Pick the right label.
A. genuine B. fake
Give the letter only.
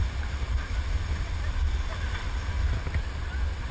A